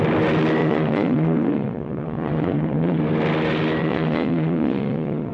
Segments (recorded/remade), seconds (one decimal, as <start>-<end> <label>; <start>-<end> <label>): 0.0-0.6 recorded; 0.6-3.0 remade; 3.0-3.8 recorded; 3.8-5.3 remade